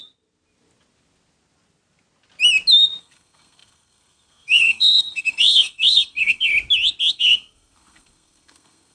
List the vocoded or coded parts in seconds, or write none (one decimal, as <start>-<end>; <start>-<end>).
3.0-6.5; 7.1-8.9

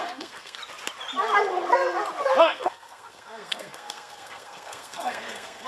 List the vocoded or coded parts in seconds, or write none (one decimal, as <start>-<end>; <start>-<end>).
0.0-0.6; 2.4-5.7

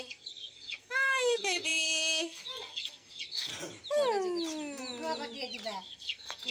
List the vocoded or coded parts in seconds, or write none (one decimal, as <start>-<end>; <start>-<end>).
0.0-3.5; 5.8-6.5

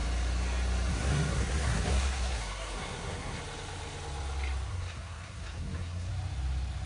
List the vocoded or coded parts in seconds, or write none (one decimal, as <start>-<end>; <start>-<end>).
0.9-3.4; 4.7-6.1

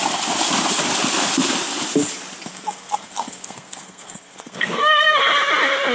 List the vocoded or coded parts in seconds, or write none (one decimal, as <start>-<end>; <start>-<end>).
2.5-5.2

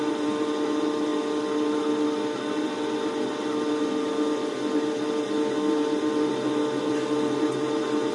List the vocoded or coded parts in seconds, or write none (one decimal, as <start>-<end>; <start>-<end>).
none